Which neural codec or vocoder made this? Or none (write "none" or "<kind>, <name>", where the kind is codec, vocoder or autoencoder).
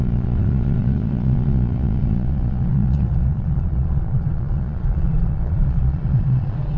vocoder, Vocos